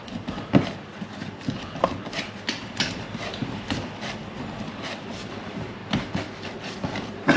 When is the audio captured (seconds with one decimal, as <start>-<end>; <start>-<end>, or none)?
5.8-6.4